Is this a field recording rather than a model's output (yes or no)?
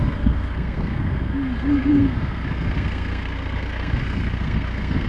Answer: no